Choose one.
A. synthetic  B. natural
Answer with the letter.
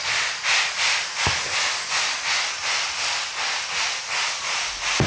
B